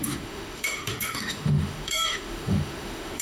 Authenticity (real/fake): fake